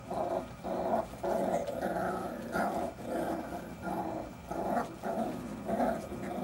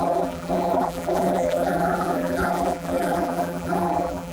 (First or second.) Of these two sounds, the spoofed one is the second